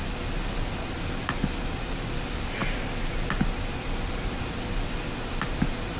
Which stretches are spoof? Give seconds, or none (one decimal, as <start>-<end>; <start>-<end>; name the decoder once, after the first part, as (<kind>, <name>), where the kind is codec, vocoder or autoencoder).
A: none